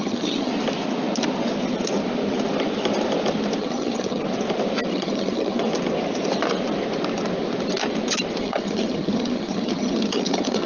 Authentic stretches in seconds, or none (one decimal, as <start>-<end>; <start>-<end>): 0.5-3.6; 4.2-4.9; 5.6-8.4